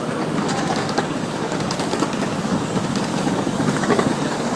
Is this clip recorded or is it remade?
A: remade